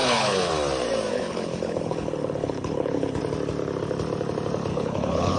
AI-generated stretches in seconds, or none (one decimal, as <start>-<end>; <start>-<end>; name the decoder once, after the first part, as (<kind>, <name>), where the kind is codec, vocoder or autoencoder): 0.0-0.5 (codec, HILCodec); 1.1-3.2; 4.7-5.4